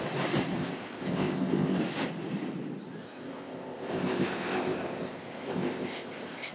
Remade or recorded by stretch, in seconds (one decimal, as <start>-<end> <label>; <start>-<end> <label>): 0.0-0.6 recorded; 0.6-1.8 remade; 1.8-3.0 recorded; 3.0-6.5 remade